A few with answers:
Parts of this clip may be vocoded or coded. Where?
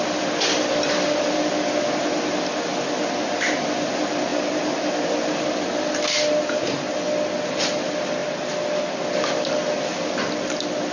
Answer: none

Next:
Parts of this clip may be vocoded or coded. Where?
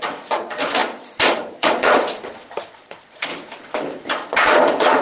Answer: 0.0-3.3 (vocoder, Vocos); 4.1-5.0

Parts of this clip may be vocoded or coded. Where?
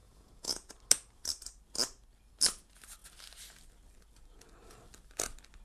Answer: 0.0-0.7 (vocoder, Vocos)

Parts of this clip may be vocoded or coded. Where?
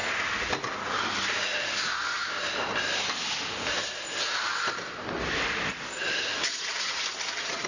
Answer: none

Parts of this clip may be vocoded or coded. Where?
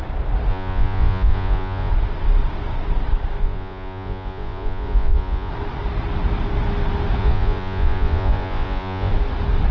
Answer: 0.5-1.9 (vocoder, Vocos); 3.4-5.5; 7.2-9.1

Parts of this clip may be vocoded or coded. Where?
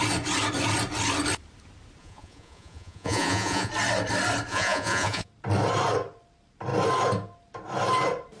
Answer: 2.0-3.7 (vocoder, Vocos); 4.5-5.3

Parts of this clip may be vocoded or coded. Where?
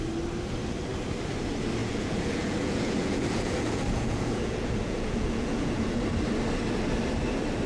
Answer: 1.8-6.0 (vocoder, Vocos)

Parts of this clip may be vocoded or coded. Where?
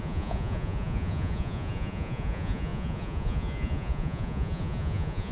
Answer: 0.0-5.3 (vocoder, Vocos)